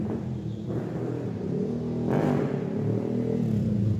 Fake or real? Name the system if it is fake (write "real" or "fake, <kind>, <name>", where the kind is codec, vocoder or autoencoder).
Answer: real